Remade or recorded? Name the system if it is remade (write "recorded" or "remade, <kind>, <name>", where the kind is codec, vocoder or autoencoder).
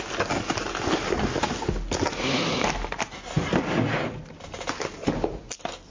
recorded